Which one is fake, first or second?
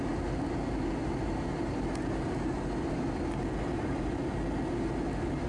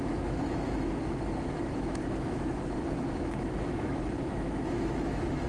second